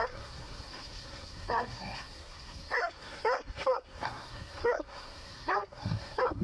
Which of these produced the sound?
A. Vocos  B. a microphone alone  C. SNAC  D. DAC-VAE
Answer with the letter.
C